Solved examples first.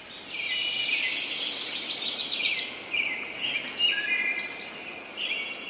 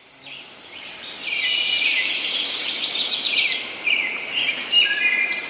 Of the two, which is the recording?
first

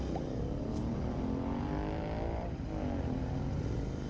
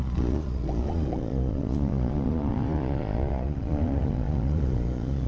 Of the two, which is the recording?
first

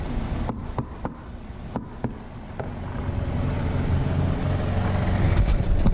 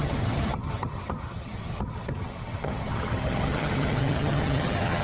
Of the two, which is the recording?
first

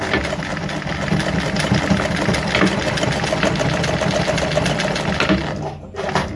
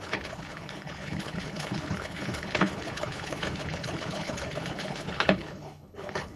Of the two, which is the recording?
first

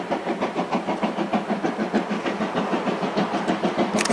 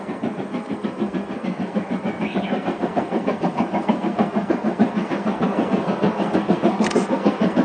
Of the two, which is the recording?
first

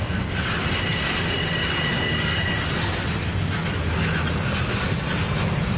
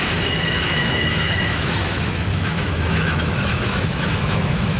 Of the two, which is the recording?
first